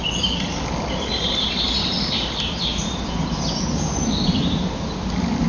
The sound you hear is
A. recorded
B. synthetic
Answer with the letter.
A